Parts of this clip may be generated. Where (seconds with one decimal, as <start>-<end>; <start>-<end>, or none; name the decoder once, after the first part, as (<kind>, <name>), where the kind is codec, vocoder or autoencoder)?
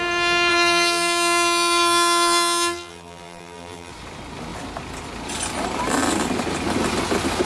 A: 0.5-3.9 (vocoder, BigVGAN v2)